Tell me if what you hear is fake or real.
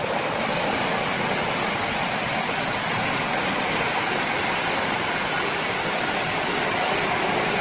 real